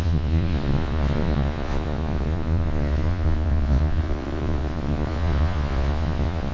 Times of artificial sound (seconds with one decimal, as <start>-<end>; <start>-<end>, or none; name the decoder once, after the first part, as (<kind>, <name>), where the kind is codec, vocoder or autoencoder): 0.0-6.5 (vocoder, Vocos)